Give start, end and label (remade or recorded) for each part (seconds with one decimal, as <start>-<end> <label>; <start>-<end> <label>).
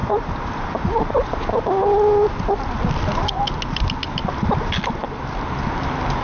0.0-1.6 remade; 1.6-6.2 recorded